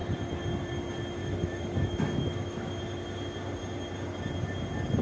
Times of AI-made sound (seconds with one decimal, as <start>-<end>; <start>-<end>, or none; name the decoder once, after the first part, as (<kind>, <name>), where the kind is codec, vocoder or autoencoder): 1.2-2.7 (autoencoder, DAC-VAE)